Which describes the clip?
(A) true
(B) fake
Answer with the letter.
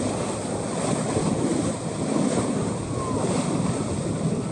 A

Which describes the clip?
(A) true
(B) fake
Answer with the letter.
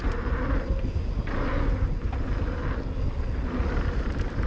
A